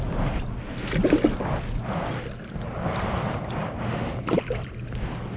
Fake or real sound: real